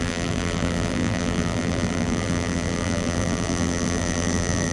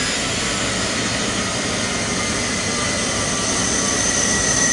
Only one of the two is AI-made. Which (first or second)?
first